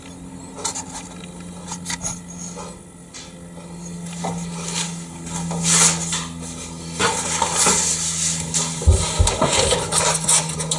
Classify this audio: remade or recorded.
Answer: recorded